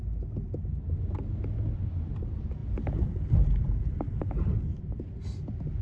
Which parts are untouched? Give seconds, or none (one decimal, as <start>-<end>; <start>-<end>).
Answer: 0.0-5.8